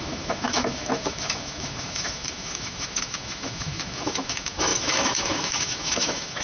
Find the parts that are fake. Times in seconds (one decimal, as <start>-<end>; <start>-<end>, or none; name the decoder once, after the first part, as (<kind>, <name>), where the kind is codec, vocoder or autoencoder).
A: 0.0-6.4 (autoencoder, DAC-VAE)